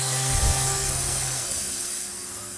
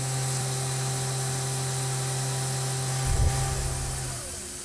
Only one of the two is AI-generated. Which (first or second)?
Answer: first